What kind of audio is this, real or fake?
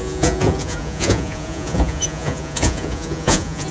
fake